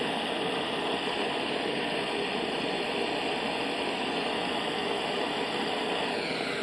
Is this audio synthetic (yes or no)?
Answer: no